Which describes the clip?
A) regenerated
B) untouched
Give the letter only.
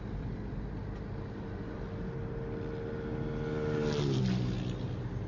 B